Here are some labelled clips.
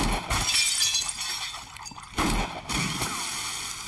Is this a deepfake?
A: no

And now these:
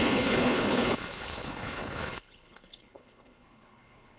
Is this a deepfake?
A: yes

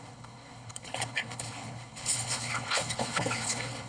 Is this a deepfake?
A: yes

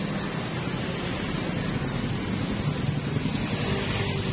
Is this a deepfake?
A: no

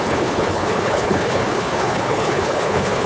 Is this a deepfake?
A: yes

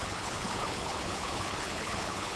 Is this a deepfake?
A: yes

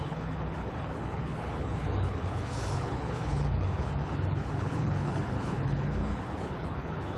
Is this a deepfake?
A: yes